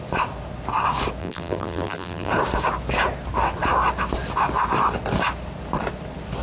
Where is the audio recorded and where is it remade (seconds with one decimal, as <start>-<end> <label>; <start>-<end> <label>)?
0.0-1.2 recorded; 1.2-2.3 remade; 2.3-6.4 recorded